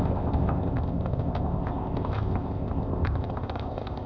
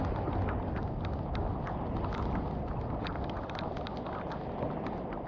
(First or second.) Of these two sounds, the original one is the second